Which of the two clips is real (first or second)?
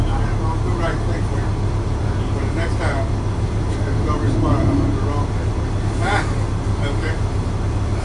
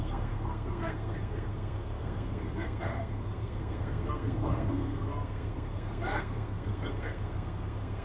first